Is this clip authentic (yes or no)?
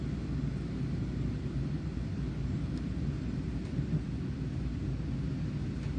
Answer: yes